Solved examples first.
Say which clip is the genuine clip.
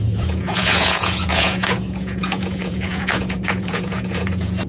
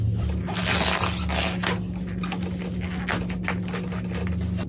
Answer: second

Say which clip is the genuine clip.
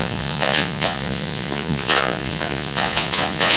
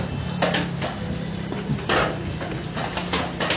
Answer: second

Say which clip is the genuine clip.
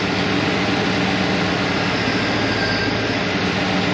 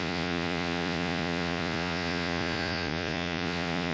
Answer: first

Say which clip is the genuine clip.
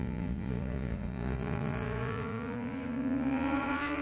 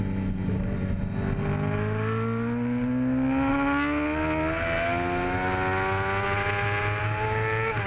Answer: second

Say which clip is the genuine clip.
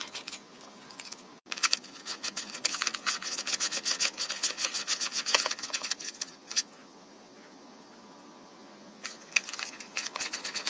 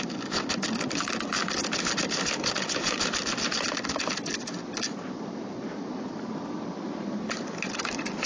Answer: second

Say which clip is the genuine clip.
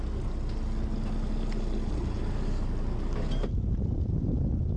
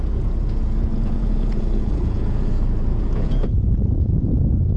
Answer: first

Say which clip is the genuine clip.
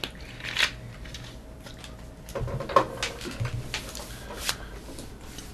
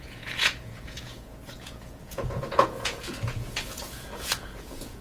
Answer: first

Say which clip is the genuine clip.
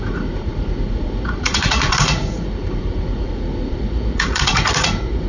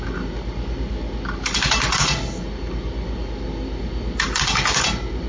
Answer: second